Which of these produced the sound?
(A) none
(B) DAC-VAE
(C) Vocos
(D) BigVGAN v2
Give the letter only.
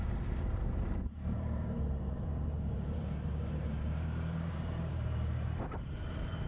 D